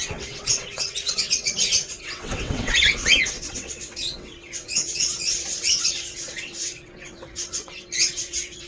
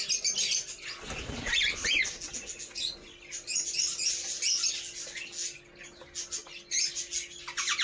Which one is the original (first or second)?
second